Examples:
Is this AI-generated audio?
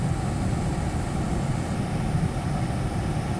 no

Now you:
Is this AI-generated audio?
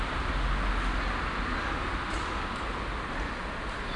no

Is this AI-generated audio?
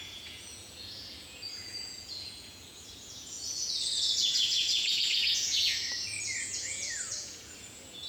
yes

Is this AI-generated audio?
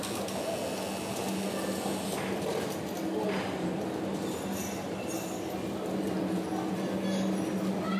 no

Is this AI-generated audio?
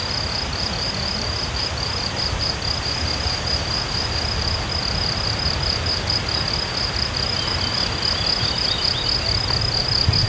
no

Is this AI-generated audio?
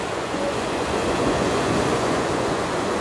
yes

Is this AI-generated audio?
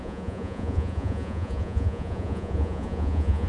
yes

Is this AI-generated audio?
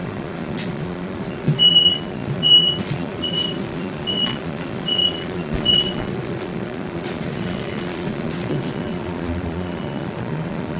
yes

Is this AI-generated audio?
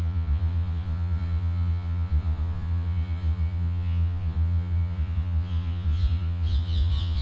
yes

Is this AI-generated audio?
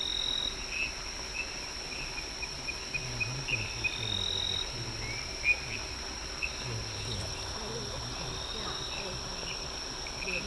no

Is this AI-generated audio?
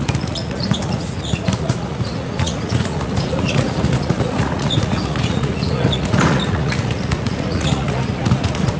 yes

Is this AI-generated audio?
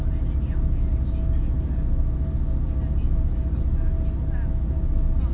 no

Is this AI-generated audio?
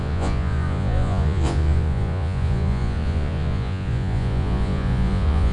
yes